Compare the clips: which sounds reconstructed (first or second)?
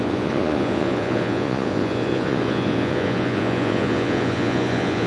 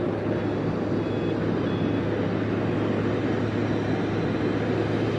first